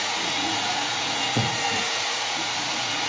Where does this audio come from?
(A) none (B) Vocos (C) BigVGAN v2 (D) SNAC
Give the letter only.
B